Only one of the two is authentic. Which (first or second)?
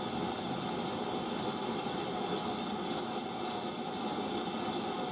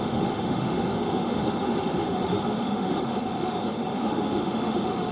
first